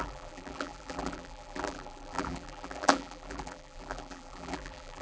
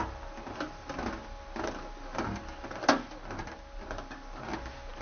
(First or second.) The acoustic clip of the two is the second